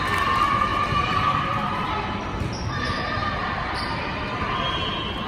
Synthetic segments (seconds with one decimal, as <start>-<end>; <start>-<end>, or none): 0.7-1.8; 3.2-4.4